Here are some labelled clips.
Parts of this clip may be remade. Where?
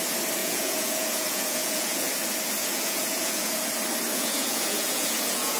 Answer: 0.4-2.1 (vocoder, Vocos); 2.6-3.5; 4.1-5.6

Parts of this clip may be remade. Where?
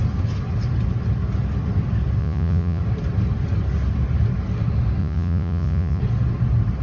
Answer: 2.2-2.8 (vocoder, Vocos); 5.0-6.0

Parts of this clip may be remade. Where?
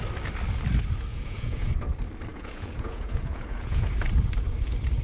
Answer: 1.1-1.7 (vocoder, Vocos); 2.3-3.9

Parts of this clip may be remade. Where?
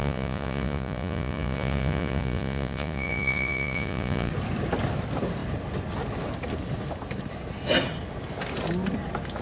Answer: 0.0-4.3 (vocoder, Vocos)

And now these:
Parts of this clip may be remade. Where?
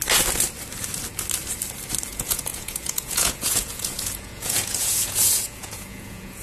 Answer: 2.1-6.4 (vocoder, Vocos)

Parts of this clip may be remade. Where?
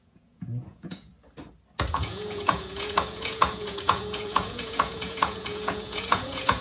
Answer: 0.0-1.1 (vocoder, Vocos); 1.9-6.6